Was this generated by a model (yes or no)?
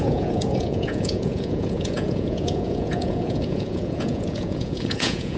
yes